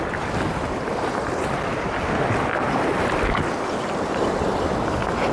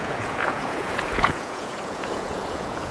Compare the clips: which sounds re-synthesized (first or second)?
second